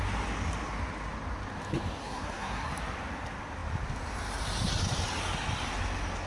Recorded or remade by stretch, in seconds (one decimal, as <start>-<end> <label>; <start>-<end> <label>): 0.0-2.0 recorded; 2.0-2.7 remade; 2.7-6.3 recorded